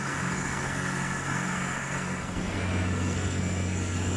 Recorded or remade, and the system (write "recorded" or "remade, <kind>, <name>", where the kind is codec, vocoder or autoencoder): remade, codec, SNAC